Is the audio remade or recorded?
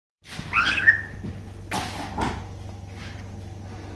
remade